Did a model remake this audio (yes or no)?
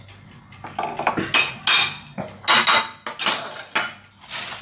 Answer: no